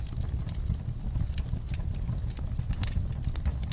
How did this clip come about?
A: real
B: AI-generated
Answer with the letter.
A